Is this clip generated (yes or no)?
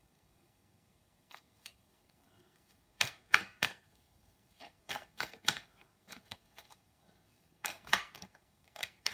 yes